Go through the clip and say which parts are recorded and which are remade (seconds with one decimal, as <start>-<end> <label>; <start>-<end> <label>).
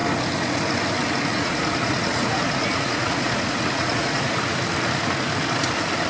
0.0-1.3 recorded; 1.3-4.3 remade; 4.3-6.1 recorded